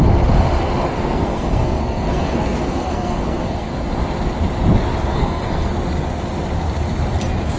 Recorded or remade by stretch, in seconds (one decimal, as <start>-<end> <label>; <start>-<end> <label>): 0.0-0.9 recorded; 0.9-3.7 remade; 3.7-5.1 recorded; 5.1-5.7 remade; 5.7-7.6 recorded